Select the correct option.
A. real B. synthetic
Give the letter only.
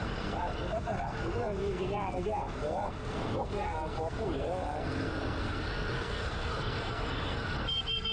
B